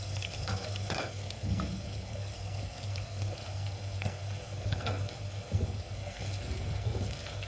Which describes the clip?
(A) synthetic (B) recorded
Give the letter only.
A